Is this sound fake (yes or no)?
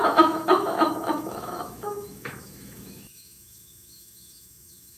yes